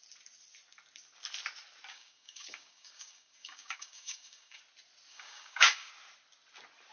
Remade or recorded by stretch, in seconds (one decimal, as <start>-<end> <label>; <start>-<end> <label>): 0.0-1.9 recorded; 1.9-4.6 remade; 4.6-5.1 recorded; 5.1-5.9 remade; 5.9-6.9 recorded